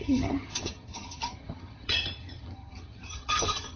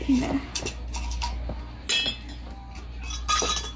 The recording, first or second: second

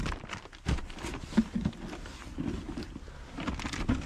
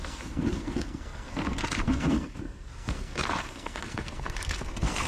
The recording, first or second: first